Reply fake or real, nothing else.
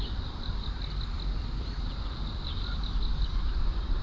fake